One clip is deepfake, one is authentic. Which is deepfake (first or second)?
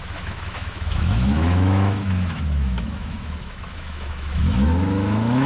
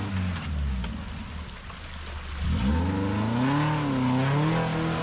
first